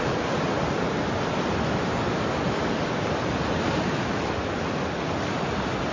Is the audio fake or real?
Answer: real